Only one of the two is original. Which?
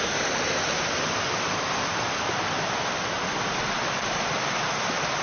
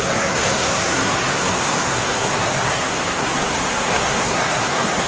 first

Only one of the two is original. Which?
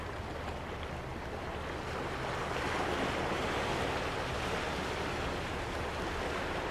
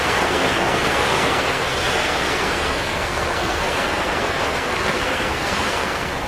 first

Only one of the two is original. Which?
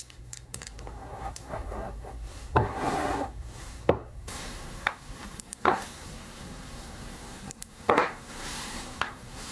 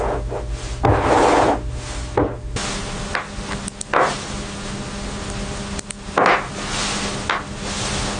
second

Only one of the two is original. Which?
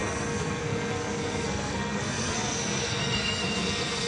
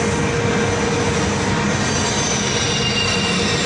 second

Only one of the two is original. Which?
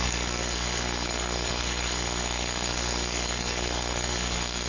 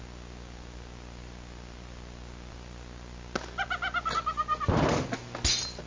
second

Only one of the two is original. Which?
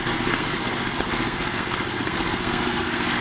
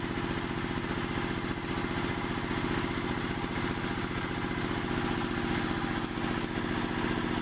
second